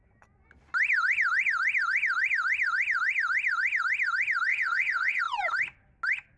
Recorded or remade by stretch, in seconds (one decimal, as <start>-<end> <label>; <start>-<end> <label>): 0.0-4.5 recorded; 4.5-5.2 remade; 5.2-6.4 recorded